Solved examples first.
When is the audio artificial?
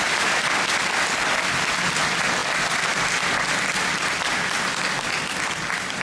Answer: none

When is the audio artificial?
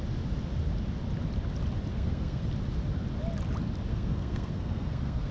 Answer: 1.9-2.4 (codec, SNAC); 3.9-5.3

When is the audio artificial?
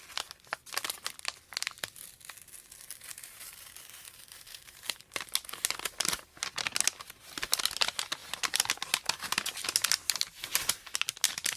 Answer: 3.1-5.2 (vocoder, BigVGAN v2)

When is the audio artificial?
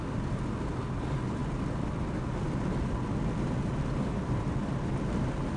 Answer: none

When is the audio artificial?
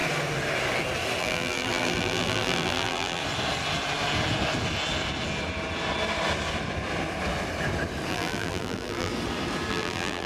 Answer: 1.2-3.2 (vocoder, BigVGAN v2); 8.1-9.1; 9.7-10.3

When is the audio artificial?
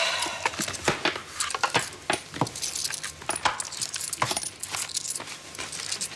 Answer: none